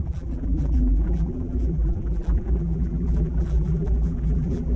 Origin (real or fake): fake